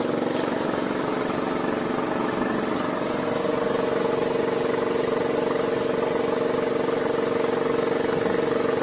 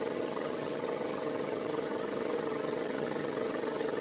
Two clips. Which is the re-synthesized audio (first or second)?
second